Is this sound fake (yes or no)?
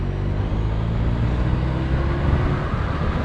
no